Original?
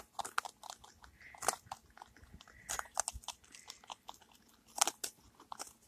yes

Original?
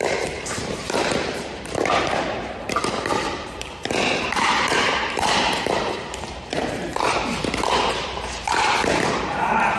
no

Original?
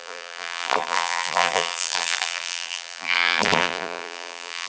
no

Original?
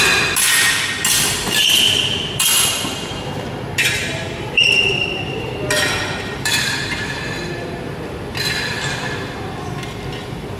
no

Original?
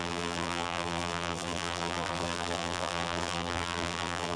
no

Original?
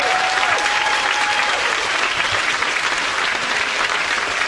no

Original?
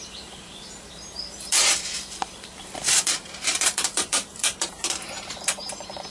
no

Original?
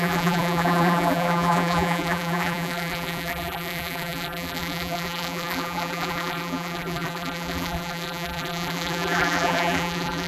no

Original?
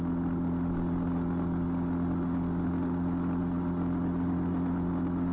yes